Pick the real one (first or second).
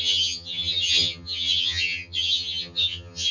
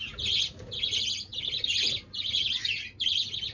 second